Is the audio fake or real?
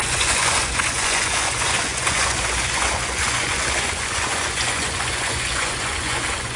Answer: fake